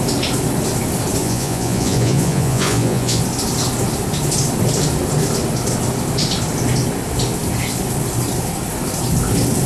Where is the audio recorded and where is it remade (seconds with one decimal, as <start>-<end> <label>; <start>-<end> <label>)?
0.0-1.2 recorded; 1.2-3.2 remade; 3.2-9.7 recorded